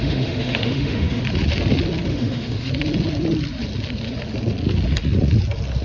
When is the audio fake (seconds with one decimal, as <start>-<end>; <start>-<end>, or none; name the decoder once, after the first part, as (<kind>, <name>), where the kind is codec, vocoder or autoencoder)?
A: 0.0-1.2 (autoencoder, DAC-VAE); 2.1-2.7